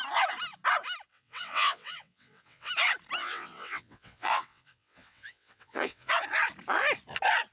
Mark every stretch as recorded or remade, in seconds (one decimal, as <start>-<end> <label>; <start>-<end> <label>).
0.0-1.1 recorded; 1.1-2.7 remade; 2.7-3.2 recorded; 3.2-6.1 remade; 6.1-7.5 recorded